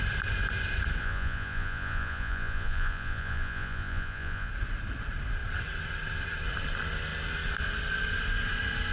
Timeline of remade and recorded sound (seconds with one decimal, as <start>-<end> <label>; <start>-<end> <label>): 0.0-1.0 recorded; 1.0-4.5 remade; 4.5-8.9 recorded